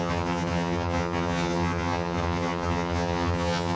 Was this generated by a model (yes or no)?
yes